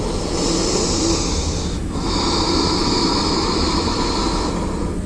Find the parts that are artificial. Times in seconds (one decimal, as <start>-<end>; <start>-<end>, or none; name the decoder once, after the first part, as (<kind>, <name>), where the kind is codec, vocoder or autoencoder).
1.4-4.5 (autoencoder, DAC-VAE)